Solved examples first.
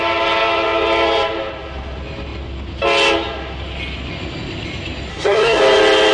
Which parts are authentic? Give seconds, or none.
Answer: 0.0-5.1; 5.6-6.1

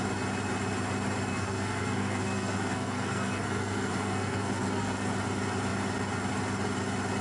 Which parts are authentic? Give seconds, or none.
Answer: 0.0-1.3; 5.1-7.2

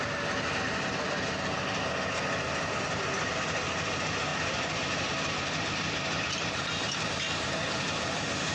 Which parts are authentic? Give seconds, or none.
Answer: 0.0-8.5

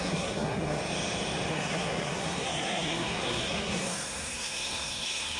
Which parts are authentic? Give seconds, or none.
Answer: 0.8-1.5

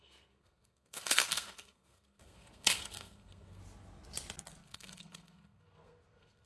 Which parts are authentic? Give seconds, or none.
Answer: 3.6-4.6

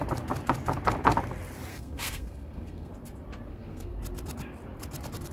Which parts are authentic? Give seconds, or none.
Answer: 0.0-1.7; 2.9-3.5; 4.0-5.3

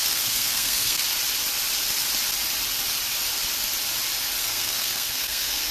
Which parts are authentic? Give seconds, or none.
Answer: 1.0-4.4

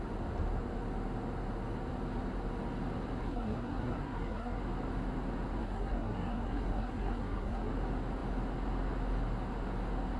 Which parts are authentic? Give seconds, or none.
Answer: 0.0-3.2; 4.6-5.6; 7.7-10.2